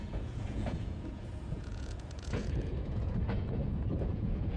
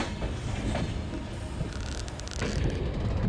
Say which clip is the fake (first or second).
first